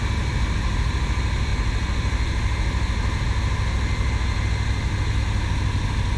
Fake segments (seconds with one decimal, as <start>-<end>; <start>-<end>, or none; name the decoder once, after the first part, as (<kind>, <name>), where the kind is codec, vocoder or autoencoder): none